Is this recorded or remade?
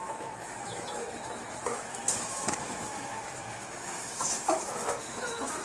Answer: remade